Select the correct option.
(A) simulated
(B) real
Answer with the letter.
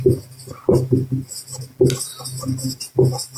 B